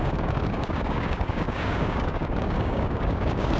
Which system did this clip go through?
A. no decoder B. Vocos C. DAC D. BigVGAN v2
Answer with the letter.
C